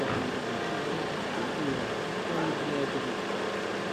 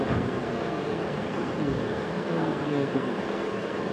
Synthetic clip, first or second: second